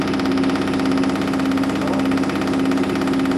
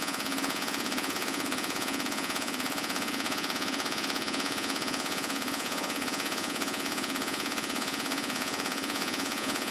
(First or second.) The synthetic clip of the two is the second